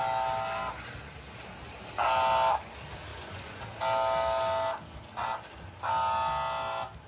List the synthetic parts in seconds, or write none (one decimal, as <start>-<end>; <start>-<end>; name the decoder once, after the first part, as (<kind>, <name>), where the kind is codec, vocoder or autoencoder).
3.1-3.6 (vocoder, Vocos)